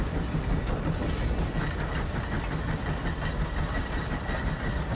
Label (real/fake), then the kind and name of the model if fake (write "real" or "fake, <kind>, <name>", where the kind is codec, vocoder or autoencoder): real